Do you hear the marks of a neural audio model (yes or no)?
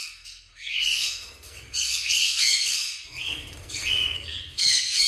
yes